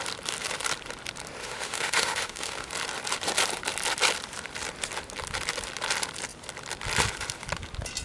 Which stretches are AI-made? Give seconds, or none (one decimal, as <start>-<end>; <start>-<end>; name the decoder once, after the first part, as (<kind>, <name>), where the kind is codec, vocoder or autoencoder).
1.4-2.7 (autoencoder, DAC-VAE)